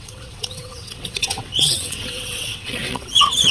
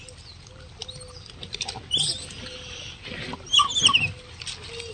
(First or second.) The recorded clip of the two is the second